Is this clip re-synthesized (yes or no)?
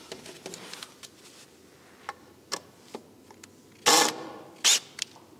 no